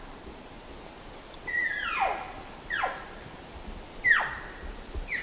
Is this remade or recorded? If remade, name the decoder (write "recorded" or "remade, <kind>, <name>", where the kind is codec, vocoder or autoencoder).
recorded